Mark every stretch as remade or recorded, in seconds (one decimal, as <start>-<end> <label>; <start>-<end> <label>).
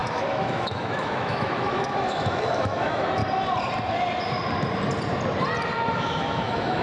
0.0-3.2 remade; 3.2-5.9 recorded; 5.9-6.8 remade